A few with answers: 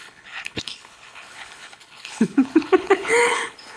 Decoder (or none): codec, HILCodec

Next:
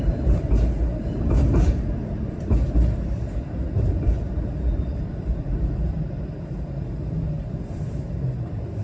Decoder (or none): vocoder, BigVGAN v2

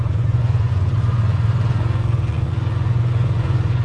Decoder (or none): vocoder, Vocos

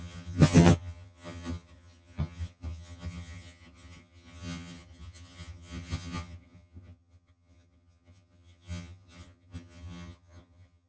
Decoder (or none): vocoder, HiFi-GAN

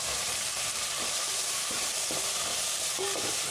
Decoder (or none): vocoder, BigVGAN v2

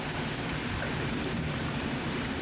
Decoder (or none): vocoder, BigVGAN v2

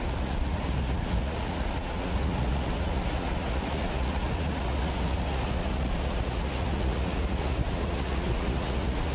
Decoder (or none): vocoder, Vocos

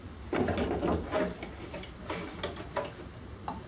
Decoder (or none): none